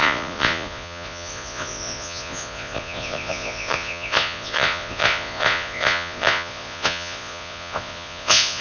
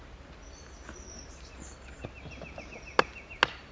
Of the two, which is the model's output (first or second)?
first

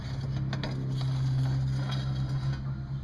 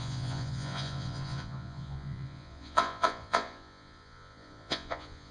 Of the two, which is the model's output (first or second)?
second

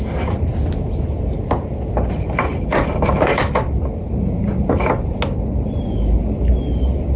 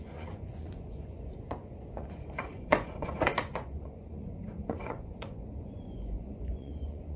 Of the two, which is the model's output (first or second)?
second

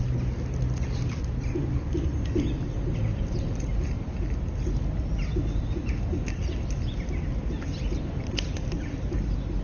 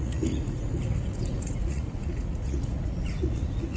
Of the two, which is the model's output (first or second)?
second